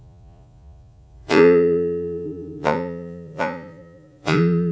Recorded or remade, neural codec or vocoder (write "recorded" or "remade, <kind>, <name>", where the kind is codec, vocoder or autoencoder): remade, vocoder, Vocos